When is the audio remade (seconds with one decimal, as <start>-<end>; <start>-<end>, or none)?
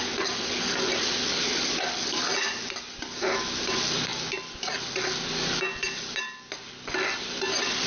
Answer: none